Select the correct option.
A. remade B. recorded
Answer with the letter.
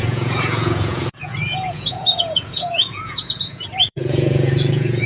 A